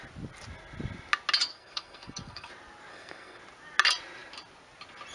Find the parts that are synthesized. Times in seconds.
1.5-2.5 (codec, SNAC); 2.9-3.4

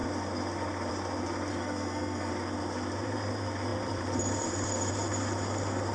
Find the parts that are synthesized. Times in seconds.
1.5-2.3 (codec, SNAC)